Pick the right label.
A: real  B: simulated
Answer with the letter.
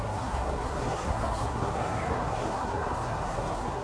B